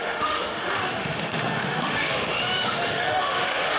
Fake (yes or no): yes